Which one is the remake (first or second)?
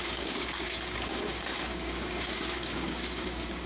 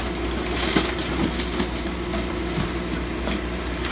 first